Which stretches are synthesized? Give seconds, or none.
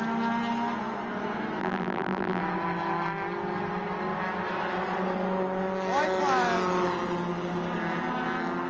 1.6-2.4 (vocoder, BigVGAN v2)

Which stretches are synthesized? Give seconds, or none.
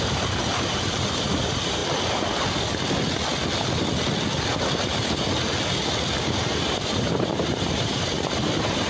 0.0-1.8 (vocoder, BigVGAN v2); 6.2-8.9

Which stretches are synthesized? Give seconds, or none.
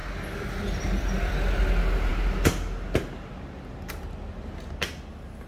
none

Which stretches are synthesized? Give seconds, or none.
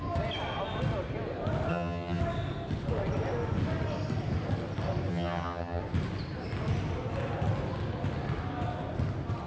1.7-2.2 (vocoder, HiFi-GAN); 5.1-5.8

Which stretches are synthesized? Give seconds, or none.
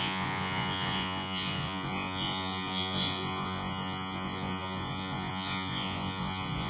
0.0-6.7 (vocoder, Vocos)